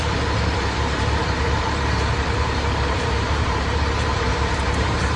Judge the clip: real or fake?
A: fake